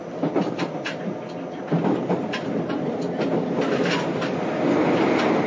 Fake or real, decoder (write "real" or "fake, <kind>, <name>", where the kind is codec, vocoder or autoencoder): real